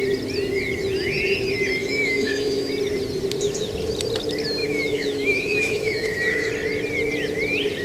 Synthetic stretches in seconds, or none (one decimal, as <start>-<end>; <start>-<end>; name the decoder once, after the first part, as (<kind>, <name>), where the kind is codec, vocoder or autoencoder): 1.8-2.7 (autoencoder, DAC-VAE); 4.6-6.5